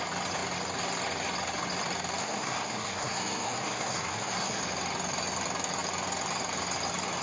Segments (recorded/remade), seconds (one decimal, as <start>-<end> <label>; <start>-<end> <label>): 0.0-2.2 recorded; 2.2-4.6 remade; 4.6-7.2 recorded